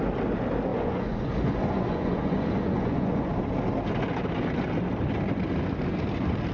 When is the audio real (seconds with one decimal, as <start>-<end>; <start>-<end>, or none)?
0.0-0.7; 3.3-6.5